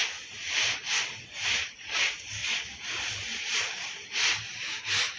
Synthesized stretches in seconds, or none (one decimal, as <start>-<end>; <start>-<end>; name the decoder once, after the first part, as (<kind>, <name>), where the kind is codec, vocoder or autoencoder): 1.0-2.4 (vocoder, BigVGAN v2); 4.4-5.2